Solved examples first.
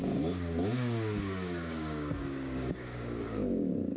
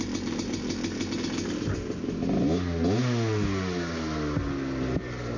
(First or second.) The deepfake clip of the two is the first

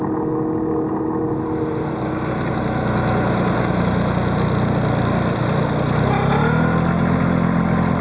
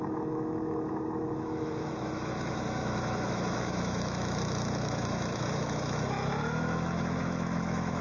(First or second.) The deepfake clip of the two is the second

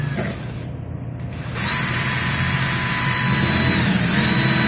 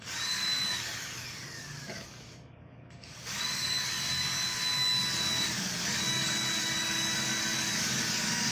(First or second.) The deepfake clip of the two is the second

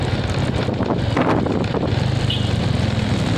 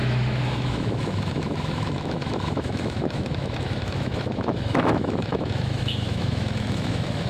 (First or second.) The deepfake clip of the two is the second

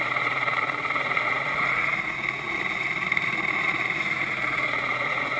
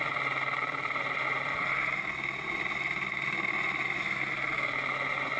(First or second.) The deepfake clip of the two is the first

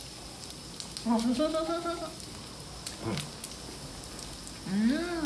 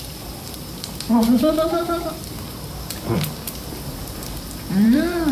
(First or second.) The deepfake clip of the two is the second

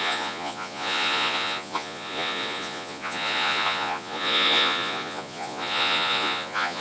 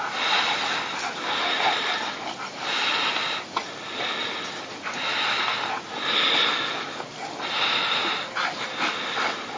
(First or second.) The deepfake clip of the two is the first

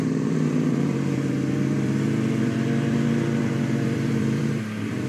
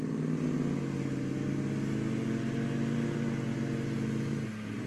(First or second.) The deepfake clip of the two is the first